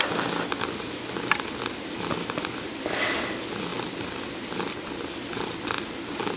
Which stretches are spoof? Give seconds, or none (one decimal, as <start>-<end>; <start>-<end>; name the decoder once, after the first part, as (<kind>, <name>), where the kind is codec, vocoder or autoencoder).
none